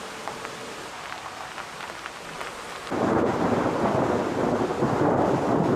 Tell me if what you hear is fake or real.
real